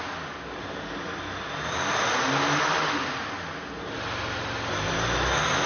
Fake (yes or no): no